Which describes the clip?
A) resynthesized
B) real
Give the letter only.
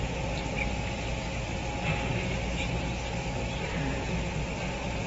B